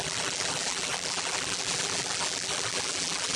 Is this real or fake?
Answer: fake